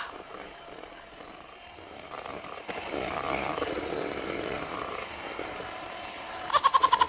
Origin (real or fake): fake